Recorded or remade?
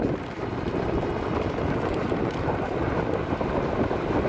recorded